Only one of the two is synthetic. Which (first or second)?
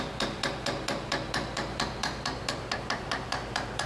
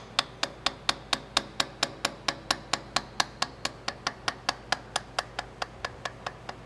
first